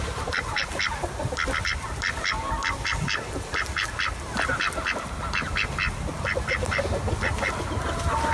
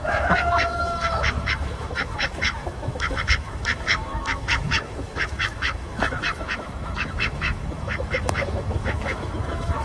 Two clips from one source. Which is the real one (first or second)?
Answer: first